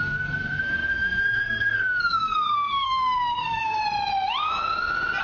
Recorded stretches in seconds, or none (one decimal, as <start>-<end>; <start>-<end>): 3.8-5.2